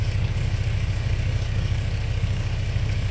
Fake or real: fake